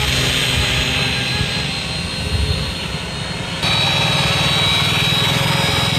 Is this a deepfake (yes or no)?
no